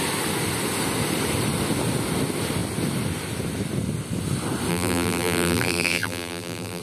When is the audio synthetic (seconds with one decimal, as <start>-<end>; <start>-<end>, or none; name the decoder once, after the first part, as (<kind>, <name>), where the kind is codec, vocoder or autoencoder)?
4.7-6.8 (vocoder, BigVGAN v2)